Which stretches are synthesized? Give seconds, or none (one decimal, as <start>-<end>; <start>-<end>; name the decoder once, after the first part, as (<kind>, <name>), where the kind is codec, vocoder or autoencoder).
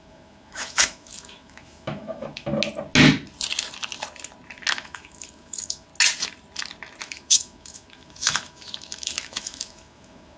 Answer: 0.0-2.5 (autoencoder, DAC-VAE); 4.7-5.9; 7.0-10.4